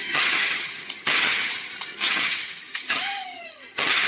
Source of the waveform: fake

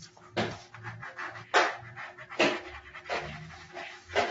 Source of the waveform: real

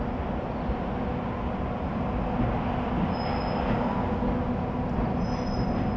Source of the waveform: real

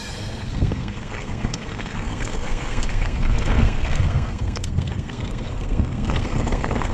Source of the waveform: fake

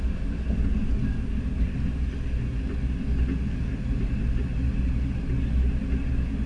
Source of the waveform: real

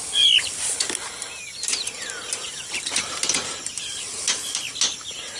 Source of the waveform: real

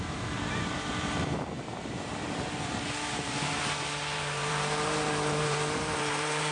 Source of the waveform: fake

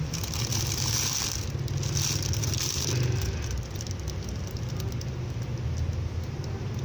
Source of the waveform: real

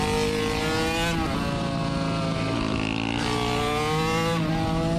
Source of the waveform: real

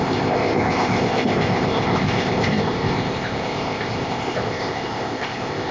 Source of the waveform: fake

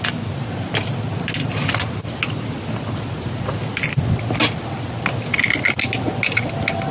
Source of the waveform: real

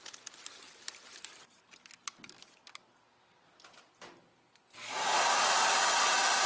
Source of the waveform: real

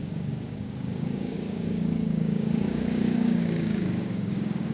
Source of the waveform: fake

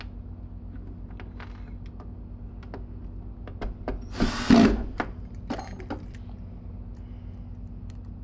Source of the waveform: real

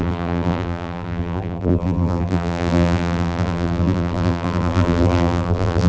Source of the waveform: fake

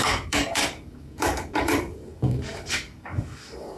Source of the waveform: fake